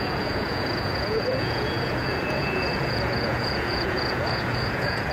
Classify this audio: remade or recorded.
remade